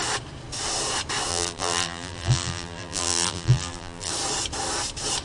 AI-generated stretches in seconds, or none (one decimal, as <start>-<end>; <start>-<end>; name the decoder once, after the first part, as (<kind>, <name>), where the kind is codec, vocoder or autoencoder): 1.3-4.1 (vocoder, BigVGAN v2)